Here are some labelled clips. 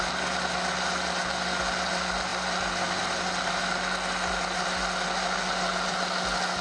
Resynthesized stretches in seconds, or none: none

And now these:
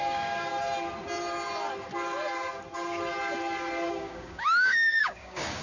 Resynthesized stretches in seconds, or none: 0.0-0.5 (codec, DAC); 3.9-5.6

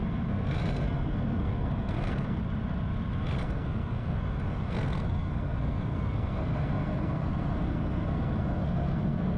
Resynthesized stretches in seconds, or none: 0.0-2.4 (codec, SNAC); 3.2-9.4

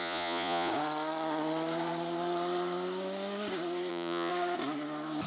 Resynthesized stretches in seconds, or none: 0.0-0.7 (vocoder, Vocos); 3.9-4.3

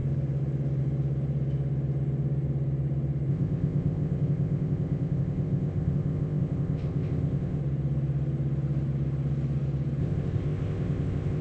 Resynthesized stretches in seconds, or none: 3.3-7.6 (codec, ZipCodec); 10.0-11.4